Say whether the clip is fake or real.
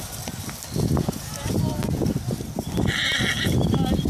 real